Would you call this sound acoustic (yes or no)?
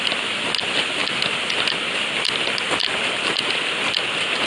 yes